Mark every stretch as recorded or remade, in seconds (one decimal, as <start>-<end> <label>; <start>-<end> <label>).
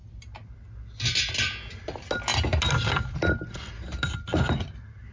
0.0-5.1 recorded